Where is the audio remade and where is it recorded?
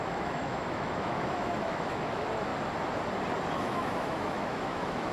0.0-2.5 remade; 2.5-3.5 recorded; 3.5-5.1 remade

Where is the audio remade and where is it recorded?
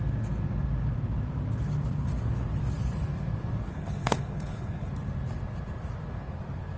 0.0-3.7 recorded; 3.7-4.9 remade; 4.9-6.8 recorded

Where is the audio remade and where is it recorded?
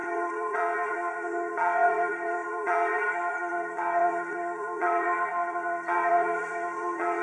0.0-7.2 remade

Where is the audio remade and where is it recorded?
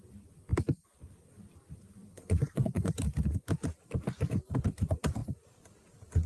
0.0-2.0 recorded; 2.0-2.9 remade; 2.9-6.3 recorded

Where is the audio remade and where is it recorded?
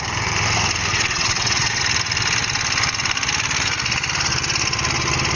0.0-0.9 recorded; 0.9-1.8 remade; 1.8-5.4 recorded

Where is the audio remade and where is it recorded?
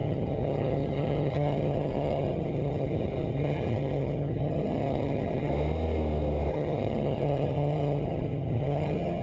0.0-5.5 remade; 5.5-6.5 recorded; 6.5-9.2 remade